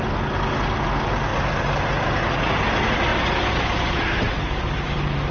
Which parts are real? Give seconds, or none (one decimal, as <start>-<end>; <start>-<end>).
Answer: 0.0-3.1